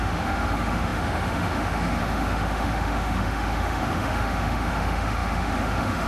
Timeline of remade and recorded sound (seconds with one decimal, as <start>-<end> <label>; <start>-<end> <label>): 0.0-6.1 remade